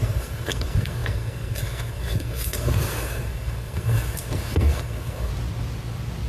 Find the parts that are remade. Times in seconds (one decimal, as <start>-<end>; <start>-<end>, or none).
0.0-5.3